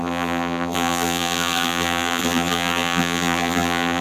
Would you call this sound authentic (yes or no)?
no